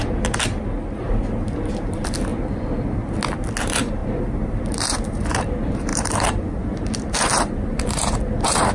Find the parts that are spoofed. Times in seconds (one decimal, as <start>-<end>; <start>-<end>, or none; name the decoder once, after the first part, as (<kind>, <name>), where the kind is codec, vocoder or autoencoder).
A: 1.0-2.3 (vocoder, BigVGAN v2); 3.6-8.7